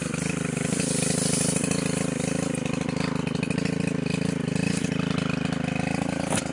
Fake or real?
real